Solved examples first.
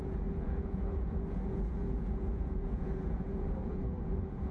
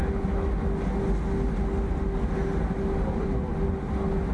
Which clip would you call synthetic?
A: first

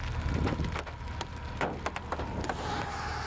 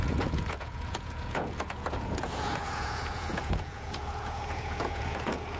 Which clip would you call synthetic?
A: second